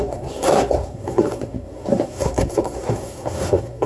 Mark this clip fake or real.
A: fake